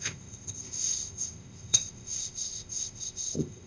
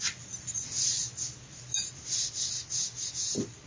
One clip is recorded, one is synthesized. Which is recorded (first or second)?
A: second